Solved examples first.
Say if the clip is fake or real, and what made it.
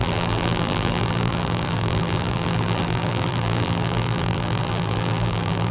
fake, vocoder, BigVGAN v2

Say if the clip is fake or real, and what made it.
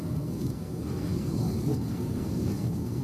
fake, codec, SNAC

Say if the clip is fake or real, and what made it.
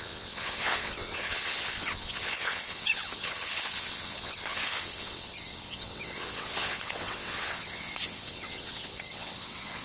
fake, vocoder, WaveNeXt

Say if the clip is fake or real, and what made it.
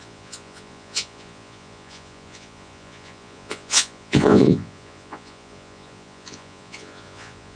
fake, vocoder, Vocos